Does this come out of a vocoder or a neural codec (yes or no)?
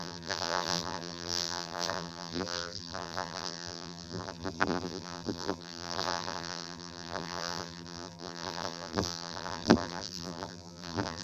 yes